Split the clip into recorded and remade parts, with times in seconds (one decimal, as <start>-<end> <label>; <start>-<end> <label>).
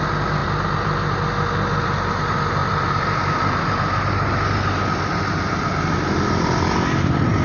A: 0.0-7.4 recorded